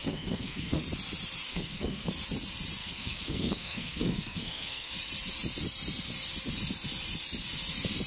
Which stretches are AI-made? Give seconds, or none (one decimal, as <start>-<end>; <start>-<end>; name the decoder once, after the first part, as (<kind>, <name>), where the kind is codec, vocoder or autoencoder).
0.0-0.8 (codec, SNAC); 1.5-2.1; 2.8-4.9